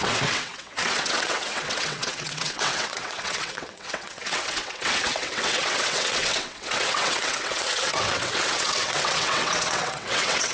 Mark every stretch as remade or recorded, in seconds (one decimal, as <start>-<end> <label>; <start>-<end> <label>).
0.0-10.5 remade